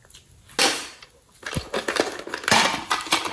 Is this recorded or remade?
recorded